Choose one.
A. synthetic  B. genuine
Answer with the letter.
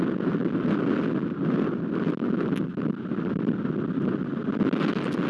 B